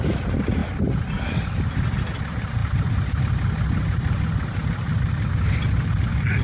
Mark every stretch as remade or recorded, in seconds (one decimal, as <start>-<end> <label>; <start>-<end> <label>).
0.0-6.4 recorded